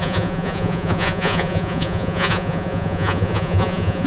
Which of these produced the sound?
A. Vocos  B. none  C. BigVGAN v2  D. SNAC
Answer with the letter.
A